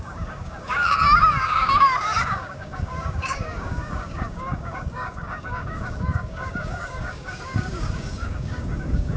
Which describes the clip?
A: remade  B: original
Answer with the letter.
A